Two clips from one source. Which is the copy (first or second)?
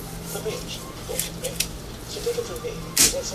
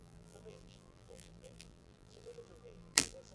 second